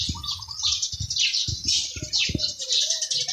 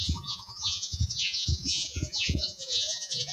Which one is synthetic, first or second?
second